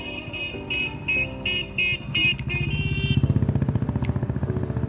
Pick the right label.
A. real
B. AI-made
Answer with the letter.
A